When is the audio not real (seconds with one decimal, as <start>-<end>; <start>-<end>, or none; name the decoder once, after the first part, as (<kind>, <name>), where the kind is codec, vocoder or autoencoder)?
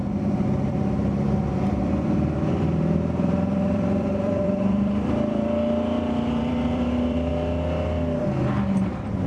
0.0-7.3 (vocoder, BigVGAN v2)